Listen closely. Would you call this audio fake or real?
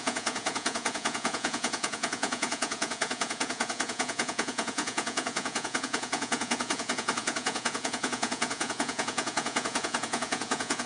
fake